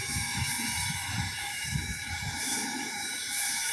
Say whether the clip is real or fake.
fake